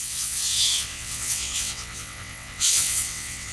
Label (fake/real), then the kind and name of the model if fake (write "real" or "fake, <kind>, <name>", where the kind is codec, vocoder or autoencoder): fake, vocoder, WaveNeXt